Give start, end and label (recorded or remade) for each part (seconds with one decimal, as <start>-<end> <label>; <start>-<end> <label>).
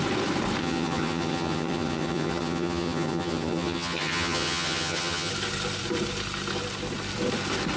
0.0-0.6 recorded; 0.6-5.3 remade; 5.3-7.8 recorded